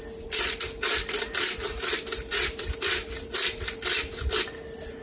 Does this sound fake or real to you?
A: real